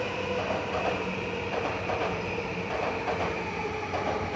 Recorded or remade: remade